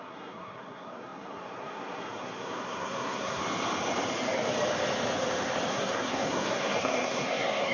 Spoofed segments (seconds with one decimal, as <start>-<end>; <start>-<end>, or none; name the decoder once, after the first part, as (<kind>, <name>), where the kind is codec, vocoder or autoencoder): 0.0-3.4 (codec, SNAC); 5.7-7.7